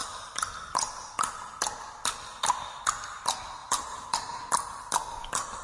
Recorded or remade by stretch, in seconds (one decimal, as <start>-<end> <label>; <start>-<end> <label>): 0.0-3.6 recorded; 3.6-4.4 remade; 4.4-5.6 recorded